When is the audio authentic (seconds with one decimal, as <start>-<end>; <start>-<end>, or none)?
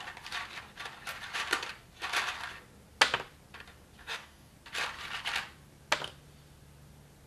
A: 0.0-4.0; 4.5-7.3